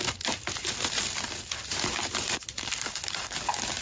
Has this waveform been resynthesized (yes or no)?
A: yes